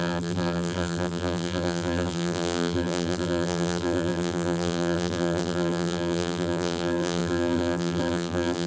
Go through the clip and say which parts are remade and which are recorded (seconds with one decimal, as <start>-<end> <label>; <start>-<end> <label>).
0.0-8.7 remade